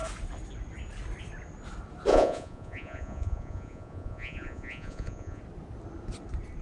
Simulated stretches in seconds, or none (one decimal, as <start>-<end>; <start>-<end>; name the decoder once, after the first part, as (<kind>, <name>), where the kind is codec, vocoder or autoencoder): 2.1-5.4 (vocoder, Vocos)